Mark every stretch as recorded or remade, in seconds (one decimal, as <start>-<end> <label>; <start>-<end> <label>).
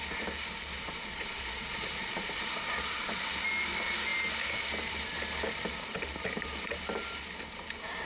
0.0-0.7 recorded; 0.7-3.2 remade; 3.2-8.0 recorded